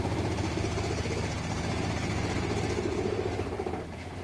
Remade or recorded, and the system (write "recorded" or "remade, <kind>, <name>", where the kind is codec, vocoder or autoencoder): remade, vocoder, BigVGAN v2